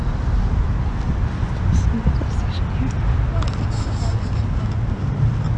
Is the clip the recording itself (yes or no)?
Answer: yes